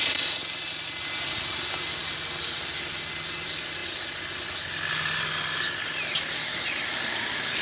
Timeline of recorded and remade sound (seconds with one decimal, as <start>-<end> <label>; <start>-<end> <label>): 0.0-7.6 recorded